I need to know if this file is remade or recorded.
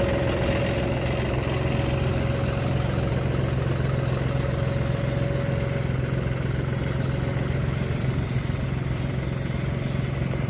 recorded